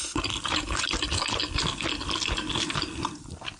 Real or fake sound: real